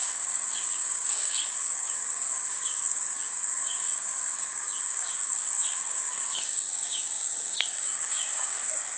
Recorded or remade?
remade